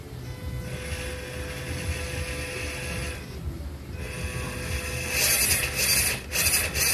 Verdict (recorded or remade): recorded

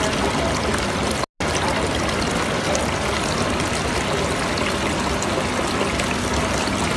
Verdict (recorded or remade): recorded